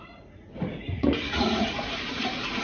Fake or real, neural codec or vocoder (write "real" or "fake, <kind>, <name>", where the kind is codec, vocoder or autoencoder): fake, vocoder, Vocos